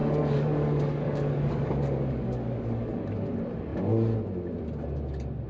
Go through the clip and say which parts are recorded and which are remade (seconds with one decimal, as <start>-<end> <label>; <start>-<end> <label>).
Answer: 0.0-3.3 remade; 3.3-5.5 recorded